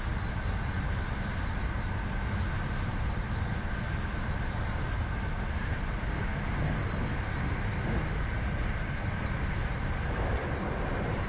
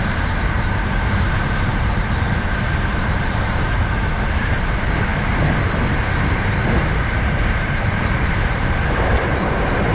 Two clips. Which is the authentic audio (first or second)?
first